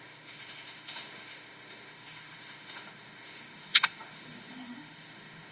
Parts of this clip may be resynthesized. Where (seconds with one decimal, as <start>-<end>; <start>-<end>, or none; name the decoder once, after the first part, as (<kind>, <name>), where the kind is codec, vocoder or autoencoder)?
0.0-5.5 (autoencoder, DAC-VAE)